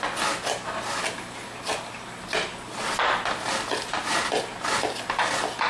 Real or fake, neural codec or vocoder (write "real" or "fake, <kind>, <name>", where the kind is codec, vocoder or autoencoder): real